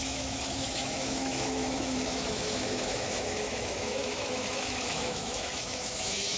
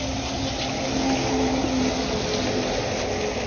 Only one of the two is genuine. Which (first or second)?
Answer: second